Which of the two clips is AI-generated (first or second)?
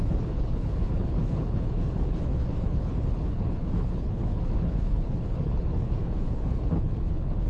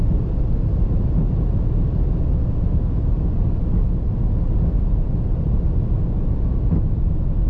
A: first